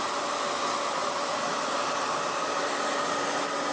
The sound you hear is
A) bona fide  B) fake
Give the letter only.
A